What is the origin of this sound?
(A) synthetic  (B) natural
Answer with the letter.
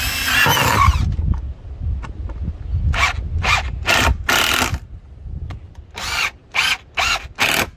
B